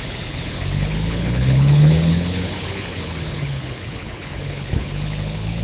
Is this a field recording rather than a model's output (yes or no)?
no